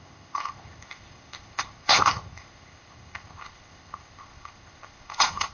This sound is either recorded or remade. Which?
remade